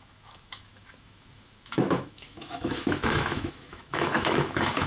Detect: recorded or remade remade